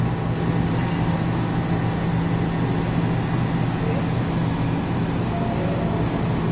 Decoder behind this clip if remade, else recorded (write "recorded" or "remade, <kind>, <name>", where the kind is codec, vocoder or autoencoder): recorded